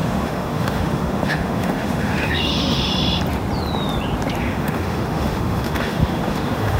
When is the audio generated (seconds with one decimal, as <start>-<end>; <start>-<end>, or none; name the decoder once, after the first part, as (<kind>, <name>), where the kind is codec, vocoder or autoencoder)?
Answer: 0.0-2.9 (autoencoder, DAC-VAE); 4.4-6.8